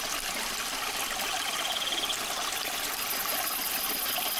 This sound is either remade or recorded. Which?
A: recorded